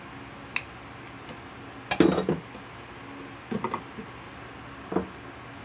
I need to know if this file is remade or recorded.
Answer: recorded